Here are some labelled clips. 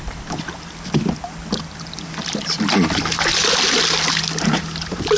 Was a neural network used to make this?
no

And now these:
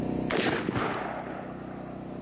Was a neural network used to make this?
no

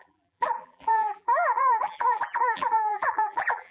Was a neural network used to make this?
yes